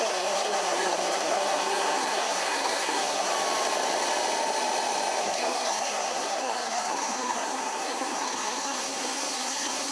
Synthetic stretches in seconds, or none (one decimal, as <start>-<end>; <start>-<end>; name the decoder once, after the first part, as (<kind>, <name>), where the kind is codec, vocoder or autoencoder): 0.0-3.3 (codec, SNAC); 5.2-9.9